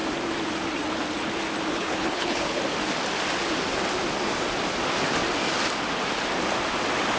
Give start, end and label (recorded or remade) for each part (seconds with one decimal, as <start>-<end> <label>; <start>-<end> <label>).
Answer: 0.0-1.7 recorded; 1.7-2.6 remade; 2.6-7.2 recorded